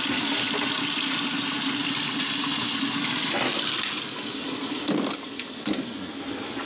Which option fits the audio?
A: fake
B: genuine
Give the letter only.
B